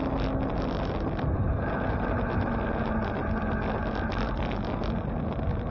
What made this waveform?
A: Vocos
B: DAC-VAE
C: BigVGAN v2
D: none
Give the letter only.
D